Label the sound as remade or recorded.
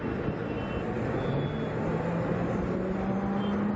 recorded